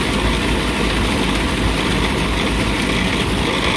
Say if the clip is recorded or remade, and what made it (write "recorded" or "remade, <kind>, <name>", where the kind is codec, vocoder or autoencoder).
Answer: recorded